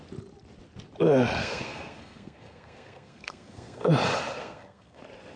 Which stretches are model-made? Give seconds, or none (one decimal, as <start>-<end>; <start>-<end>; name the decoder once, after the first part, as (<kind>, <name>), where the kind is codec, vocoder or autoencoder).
1.4-3.9 (codec, SNAC); 4.4-5.0